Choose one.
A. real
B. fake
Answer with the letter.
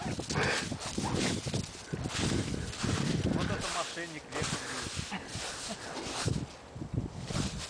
A